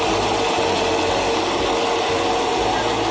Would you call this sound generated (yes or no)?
no